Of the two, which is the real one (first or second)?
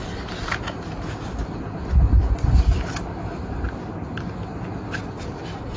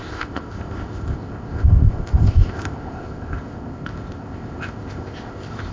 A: first